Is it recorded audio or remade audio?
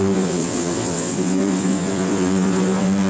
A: remade